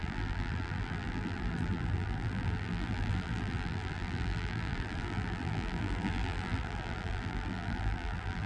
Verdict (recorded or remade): remade